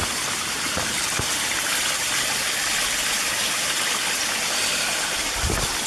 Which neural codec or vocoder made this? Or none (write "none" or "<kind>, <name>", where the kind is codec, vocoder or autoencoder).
none